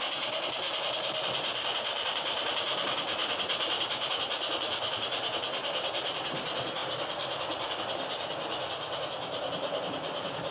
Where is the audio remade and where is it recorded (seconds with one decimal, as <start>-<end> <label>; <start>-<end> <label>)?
0.0-10.5 remade